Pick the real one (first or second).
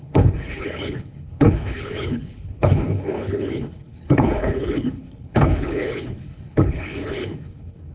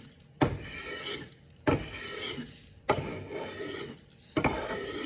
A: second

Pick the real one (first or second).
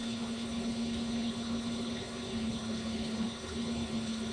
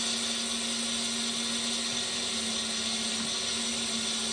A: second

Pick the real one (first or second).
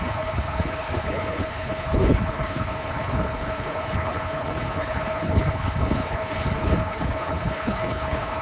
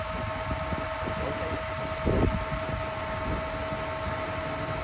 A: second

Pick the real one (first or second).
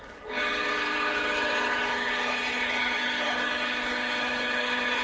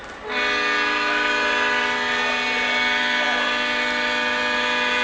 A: second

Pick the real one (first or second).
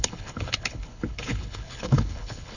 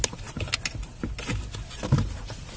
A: second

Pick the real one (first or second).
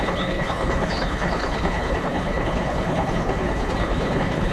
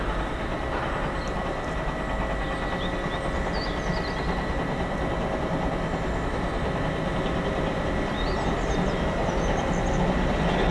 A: second